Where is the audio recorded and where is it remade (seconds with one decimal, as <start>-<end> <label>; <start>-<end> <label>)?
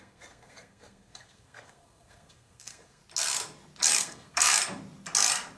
0.0-3.0 remade; 3.0-3.9 recorded; 3.9-4.6 remade; 4.6-5.6 recorded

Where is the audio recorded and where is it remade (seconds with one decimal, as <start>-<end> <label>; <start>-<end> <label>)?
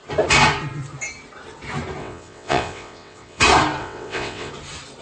0.0-2.0 recorded; 2.0-3.4 remade; 3.4-3.8 recorded; 3.8-4.5 remade; 4.5-5.0 recorded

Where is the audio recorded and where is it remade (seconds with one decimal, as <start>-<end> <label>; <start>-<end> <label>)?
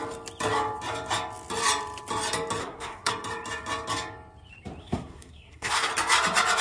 0.0-2.6 recorded; 2.6-3.1 remade; 3.1-4.8 recorded; 4.8-5.9 remade; 5.9-6.6 recorded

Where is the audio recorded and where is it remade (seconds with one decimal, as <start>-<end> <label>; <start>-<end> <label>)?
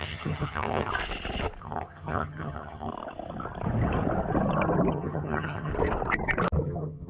0.0-0.9 remade; 0.9-1.6 recorded; 1.6-2.9 remade; 2.9-4.9 recorded; 4.9-5.7 remade; 5.7-6.6 recorded; 6.6-7.1 remade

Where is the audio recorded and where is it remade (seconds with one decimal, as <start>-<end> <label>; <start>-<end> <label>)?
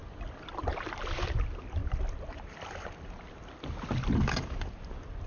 0.0-5.3 recorded